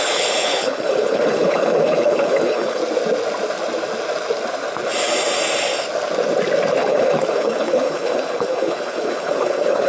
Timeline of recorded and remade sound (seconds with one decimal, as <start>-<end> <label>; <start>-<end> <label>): 0.0-2.8 remade; 2.8-6.8 recorded; 6.8-9.9 remade

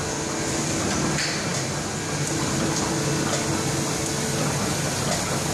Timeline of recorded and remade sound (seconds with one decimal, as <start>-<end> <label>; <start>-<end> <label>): 0.0-5.5 recorded

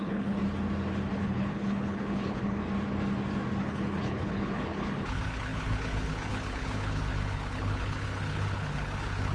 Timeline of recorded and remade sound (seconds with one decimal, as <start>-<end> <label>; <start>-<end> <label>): 0.0-0.4 remade; 0.4-1.1 recorded; 1.1-2.6 remade; 2.6-3.6 recorded; 3.6-9.3 remade

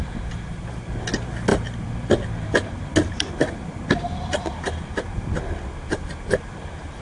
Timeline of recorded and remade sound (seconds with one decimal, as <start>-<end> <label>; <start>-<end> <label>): 0.0-7.0 recorded

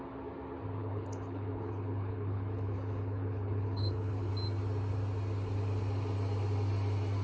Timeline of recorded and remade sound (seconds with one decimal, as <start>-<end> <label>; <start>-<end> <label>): 0.0-0.8 recorded; 0.8-4.3 remade; 4.3-7.2 recorded

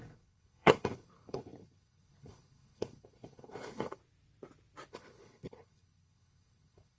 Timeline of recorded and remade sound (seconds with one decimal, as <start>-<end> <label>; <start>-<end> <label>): 0.0-4.0 remade; 4.0-4.9 recorded; 4.9-7.0 remade

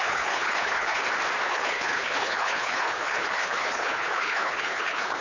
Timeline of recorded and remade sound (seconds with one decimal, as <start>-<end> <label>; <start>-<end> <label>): 0.0-1.0 remade; 1.0-1.5 recorded; 1.5-5.2 remade